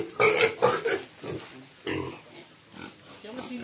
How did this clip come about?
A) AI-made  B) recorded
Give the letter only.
B